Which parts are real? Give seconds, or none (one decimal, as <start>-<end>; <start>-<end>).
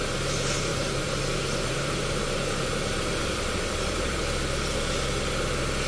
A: 0.0-0.7; 4.2-5.9